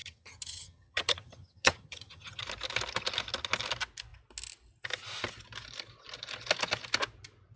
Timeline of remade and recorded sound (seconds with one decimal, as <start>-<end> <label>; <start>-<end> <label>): 0.0-2.4 remade; 2.4-7.6 recorded